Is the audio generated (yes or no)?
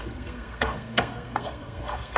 yes